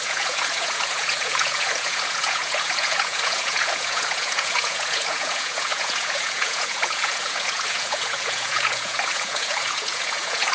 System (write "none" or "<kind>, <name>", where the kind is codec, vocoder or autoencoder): vocoder, Vocos